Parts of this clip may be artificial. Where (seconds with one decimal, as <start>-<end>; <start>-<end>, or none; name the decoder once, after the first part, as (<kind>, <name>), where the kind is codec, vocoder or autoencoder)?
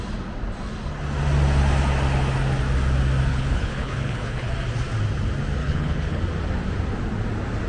3.3-4.5 (codec, HILCodec); 5.6-6.2